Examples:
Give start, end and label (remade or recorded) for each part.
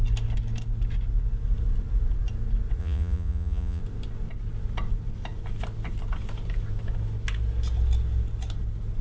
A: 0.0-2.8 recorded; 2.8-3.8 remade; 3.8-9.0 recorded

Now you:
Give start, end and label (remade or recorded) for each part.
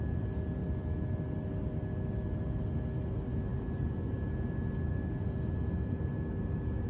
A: 0.0-6.9 recorded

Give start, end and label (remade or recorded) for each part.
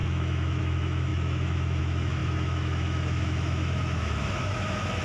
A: 0.0-5.0 remade